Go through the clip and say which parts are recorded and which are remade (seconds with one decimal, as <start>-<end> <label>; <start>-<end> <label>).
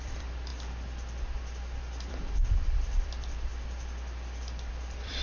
0.0-0.5 remade; 0.5-2.1 recorded; 2.1-3.5 remade; 3.5-4.7 recorded; 4.7-5.2 remade